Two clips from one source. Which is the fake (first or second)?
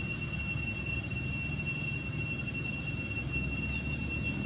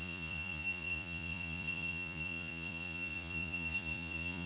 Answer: second